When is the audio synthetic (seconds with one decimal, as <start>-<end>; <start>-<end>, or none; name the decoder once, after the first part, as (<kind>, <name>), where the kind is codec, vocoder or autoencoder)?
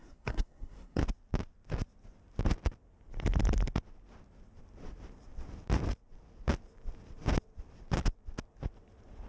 0.0-1.0 (codec, SNAC)